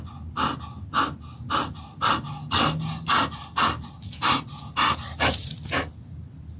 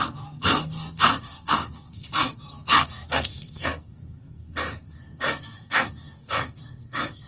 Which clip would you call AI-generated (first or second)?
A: second